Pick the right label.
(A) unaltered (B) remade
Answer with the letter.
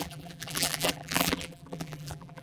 B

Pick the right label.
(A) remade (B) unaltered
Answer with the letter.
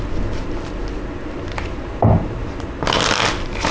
B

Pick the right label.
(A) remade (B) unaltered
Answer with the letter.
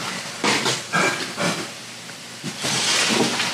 B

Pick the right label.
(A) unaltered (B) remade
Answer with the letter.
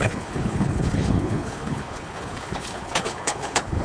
B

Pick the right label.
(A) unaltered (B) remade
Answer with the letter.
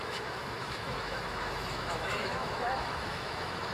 B